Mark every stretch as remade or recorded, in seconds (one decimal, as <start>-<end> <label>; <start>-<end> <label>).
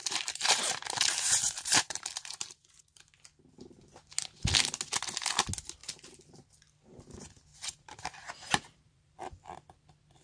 0.0-2.8 remade; 2.8-5.8 recorded; 5.8-6.5 remade; 6.5-7.5 recorded; 7.5-9.2 remade; 9.2-10.2 recorded